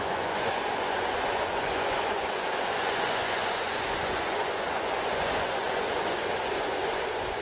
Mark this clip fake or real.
fake